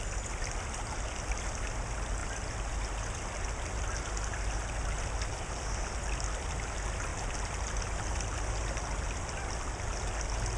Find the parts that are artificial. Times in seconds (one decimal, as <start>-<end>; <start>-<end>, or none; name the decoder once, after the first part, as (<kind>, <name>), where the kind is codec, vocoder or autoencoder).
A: none